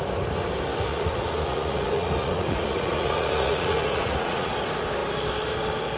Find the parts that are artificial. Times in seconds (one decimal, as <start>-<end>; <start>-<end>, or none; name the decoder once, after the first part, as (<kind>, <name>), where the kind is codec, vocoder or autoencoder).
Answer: 0.9-4.5 (vocoder, Vocos)